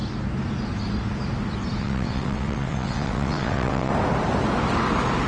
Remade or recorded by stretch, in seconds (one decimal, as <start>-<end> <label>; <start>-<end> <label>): 0.0-1.8 recorded; 1.8-3.9 remade; 3.9-5.3 recorded